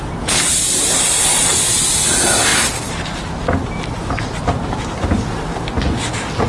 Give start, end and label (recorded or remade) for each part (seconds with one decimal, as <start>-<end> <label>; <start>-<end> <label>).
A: 0.0-6.5 recorded